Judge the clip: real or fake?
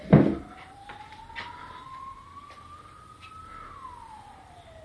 real